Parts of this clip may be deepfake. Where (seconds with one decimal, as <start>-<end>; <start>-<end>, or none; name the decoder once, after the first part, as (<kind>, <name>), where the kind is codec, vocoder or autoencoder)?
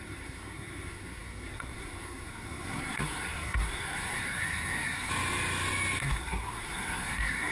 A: 0.0-5.1 (codec, SNAC); 6.0-7.5